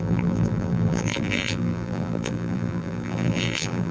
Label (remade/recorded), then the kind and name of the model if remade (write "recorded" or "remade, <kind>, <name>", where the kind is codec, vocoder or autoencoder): remade, vocoder, BigVGAN v2